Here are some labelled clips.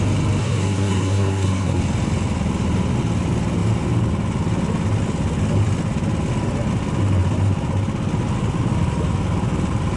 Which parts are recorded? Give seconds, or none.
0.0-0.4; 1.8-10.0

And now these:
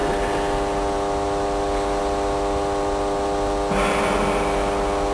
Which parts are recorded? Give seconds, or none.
0.0-5.1

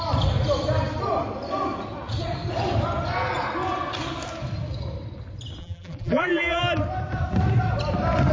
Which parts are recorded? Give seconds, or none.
0.0-5.6; 6.6-8.3